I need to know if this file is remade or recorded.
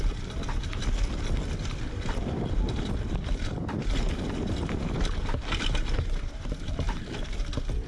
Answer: remade